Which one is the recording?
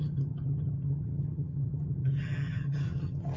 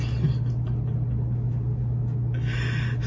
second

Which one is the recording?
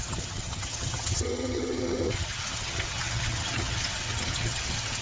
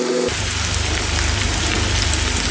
second